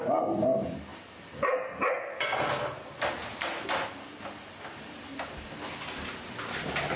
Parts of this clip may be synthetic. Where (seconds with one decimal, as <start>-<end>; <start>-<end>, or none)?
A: none